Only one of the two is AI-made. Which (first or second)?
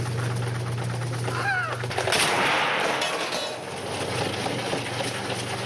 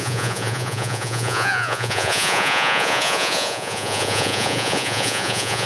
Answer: second